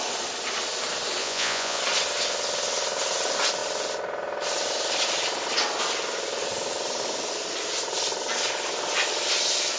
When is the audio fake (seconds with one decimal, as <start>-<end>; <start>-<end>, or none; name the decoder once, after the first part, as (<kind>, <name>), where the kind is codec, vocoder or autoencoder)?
1.2-1.8 (vocoder, Vocos)